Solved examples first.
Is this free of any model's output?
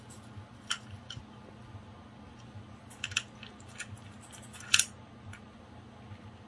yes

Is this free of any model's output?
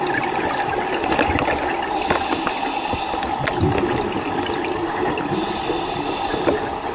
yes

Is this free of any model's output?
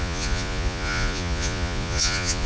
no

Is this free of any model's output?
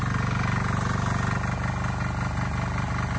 yes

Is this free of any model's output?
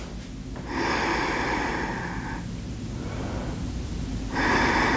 yes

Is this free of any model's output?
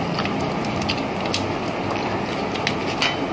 yes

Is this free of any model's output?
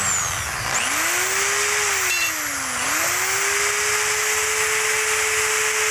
yes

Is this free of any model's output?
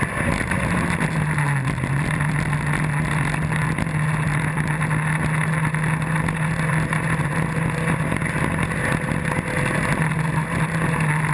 yes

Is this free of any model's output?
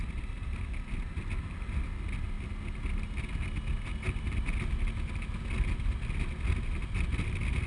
yes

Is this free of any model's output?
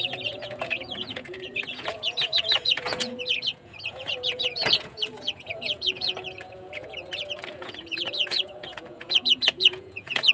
no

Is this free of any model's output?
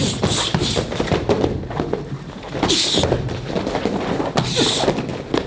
yes